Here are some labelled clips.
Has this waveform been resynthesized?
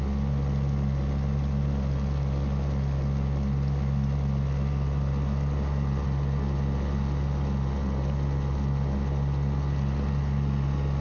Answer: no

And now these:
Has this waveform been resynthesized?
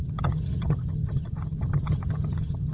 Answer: yes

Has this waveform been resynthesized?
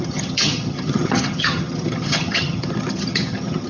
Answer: yes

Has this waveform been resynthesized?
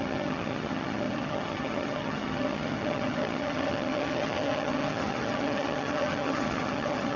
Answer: yes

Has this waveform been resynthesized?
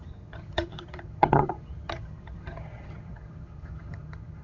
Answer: yes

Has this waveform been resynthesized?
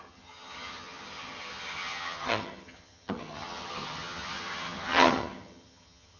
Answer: yes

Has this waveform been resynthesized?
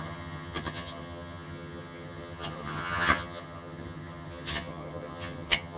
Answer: yes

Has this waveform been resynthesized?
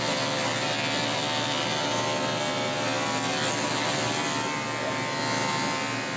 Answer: no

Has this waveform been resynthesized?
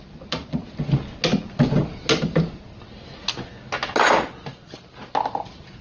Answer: no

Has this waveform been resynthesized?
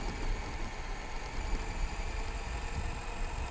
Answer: no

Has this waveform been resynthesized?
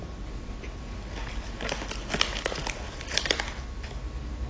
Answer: no